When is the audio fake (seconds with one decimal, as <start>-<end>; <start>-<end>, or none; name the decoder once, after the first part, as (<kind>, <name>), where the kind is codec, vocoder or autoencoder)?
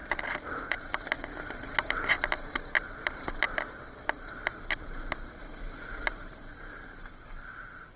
none